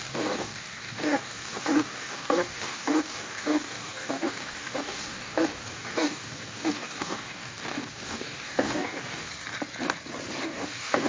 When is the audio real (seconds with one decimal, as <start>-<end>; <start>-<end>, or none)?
9.3-10.4